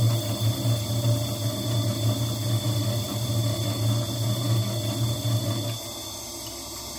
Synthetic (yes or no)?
no